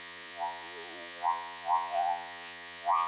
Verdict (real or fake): fake